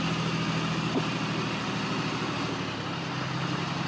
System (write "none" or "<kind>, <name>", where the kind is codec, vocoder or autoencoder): none